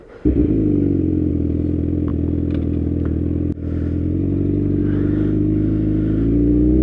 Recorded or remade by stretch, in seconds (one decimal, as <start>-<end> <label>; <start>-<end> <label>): 0.0-6.8 recorded